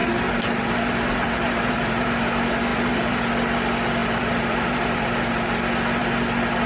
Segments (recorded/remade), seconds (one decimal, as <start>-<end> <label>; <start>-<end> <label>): 0.0-2.3 remade; 2.3-2.7 recorded; 2.7-3.3 remade; 3.3-4.0 recorded; 4.0-5.6 remade; 5.6-6.7 recorded